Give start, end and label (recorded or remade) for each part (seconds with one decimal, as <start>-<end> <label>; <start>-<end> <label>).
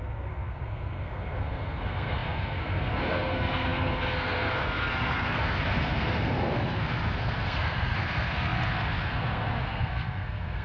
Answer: 0.0-10.6 remade